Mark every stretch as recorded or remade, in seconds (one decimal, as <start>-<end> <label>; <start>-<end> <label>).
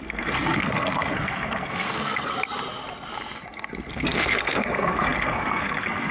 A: 0.0-2.3 remade; 2.3-3.9 recorded; 3.9-6.1 remade